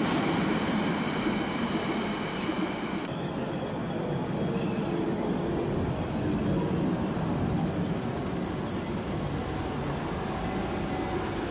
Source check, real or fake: real